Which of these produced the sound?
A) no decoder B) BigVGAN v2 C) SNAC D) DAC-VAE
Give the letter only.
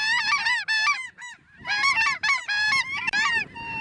B